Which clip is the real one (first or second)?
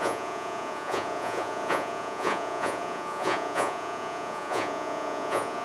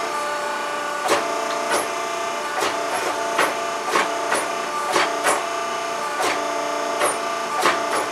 second